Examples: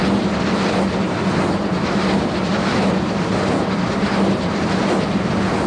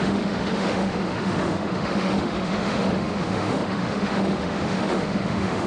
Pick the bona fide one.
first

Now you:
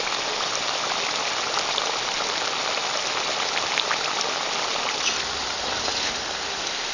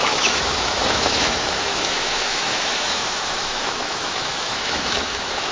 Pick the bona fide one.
first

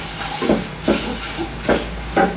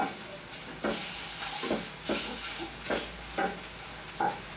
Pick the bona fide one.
second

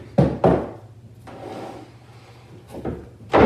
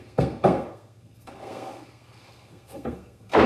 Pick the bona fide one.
first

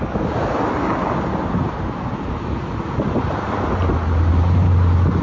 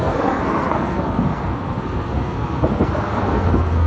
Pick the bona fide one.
first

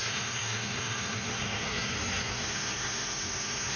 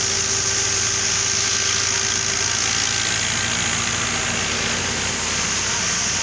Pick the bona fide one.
second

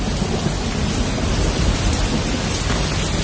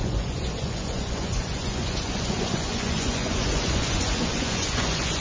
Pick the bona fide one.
first